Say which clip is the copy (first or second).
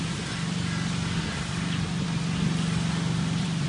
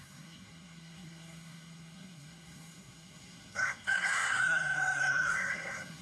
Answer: second